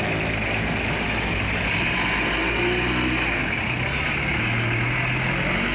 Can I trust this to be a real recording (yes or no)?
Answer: yes